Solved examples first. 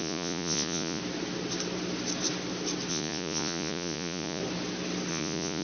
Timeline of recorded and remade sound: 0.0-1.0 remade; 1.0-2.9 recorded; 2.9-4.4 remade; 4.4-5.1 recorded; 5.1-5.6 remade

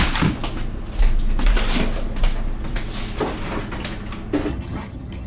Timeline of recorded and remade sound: 0.0-4.5 recorded; 4.5-5.3 remade

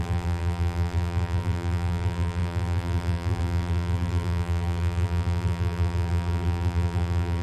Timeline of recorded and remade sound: 0.0-7.4 remade